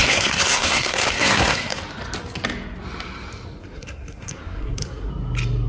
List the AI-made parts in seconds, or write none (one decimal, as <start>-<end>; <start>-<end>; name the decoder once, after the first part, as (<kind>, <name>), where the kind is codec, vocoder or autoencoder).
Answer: 0.0-1.8 (codec, SNAC); 3.6-5.1